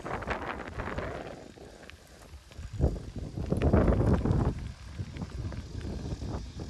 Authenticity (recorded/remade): recorded